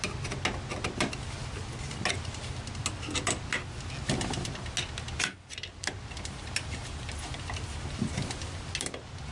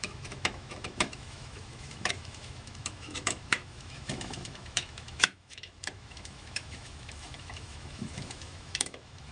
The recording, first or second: first